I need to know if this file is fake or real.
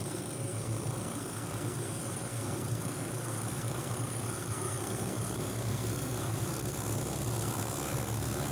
fake